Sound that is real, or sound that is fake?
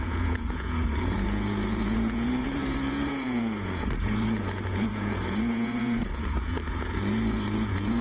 fake